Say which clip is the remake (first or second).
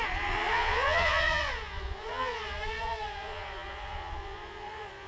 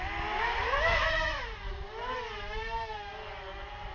first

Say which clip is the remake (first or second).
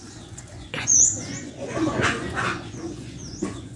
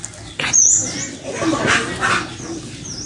first